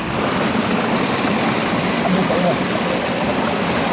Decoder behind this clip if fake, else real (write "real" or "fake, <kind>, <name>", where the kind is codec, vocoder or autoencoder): real